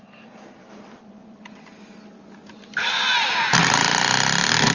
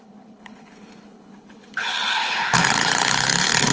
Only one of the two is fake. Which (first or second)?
second